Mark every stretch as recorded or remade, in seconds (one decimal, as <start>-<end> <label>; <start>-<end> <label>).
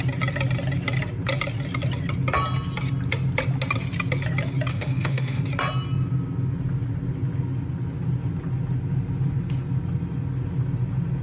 0.0-4.7 recorded; 4.7-5.4 remade; 5.4-11.2 recorded